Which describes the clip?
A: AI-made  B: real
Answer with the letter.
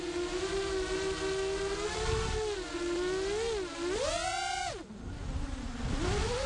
B